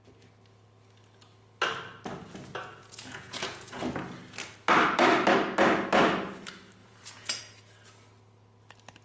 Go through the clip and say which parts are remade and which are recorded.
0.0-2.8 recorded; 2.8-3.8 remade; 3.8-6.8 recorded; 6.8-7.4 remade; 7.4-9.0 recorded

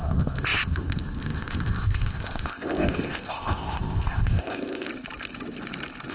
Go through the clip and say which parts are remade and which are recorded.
0.0-4.9 remade; 4.9-6.1 recorded

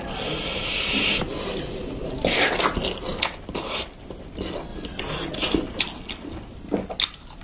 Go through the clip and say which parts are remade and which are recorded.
0.0-7.4 recorded